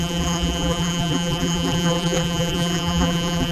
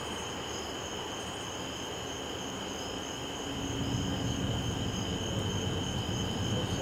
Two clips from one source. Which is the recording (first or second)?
second